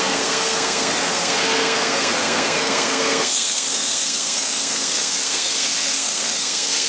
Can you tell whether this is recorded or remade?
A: remade